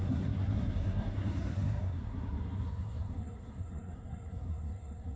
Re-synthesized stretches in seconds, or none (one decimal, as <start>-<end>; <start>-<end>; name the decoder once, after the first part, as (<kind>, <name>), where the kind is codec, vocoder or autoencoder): 0.0-5.2 (codec, SNAC)